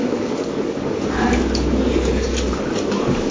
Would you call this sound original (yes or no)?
no